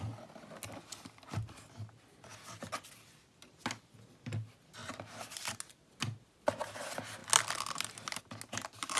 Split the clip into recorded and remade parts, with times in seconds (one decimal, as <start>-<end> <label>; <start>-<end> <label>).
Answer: 0.0-9.0 recorded